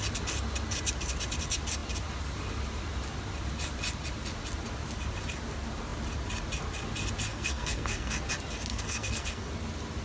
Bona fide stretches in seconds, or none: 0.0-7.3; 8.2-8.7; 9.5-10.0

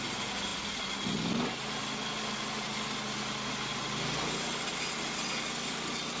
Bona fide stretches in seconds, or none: 0.0-6.2